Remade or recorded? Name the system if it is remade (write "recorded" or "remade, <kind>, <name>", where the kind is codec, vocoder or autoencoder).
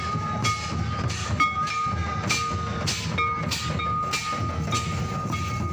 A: recorded